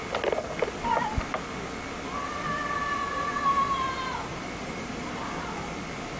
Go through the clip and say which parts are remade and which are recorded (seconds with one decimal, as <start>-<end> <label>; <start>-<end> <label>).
0.0-4.3 recorded; 4.3-5.1 remade; 5.1-6.2 recorded